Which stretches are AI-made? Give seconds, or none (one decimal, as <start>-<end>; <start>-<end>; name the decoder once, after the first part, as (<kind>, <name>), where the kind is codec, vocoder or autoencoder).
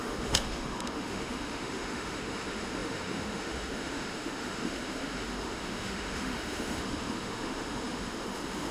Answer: 0.0-8.7 (autoencoder, DAC-VAE)